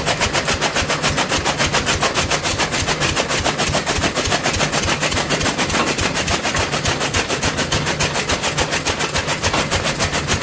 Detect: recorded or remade recorded